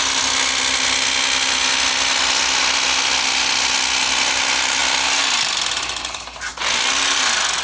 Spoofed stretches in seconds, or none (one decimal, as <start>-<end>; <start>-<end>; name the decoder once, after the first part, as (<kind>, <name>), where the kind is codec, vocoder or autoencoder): none